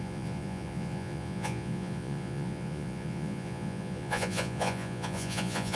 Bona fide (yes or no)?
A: no